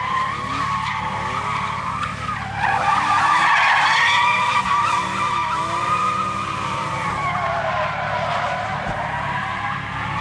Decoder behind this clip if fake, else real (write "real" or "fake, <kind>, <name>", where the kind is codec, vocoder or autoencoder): real